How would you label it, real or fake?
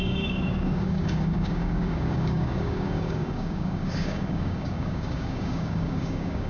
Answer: fake